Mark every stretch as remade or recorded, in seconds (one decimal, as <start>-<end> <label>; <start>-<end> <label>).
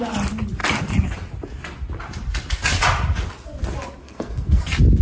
0.0-4.0 recorded; 4.0-4.6 remade; 4.6-5.0 recorded